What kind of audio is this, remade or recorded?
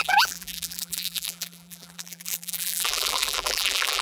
remade